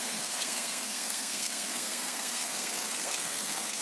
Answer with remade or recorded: remade